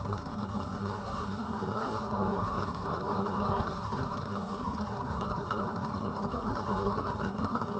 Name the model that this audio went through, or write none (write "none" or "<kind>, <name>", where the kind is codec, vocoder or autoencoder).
codec, SNAC